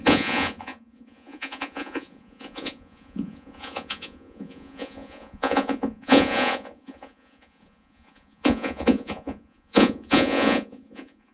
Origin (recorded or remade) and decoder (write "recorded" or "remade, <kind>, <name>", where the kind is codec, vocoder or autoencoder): remade, vocoder, Vocos